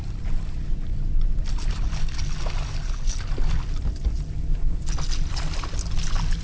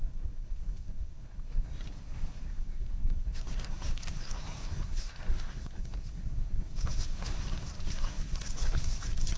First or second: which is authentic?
first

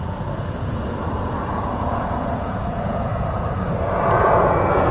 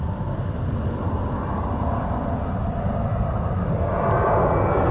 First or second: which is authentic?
second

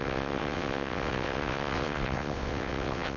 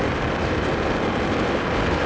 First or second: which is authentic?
second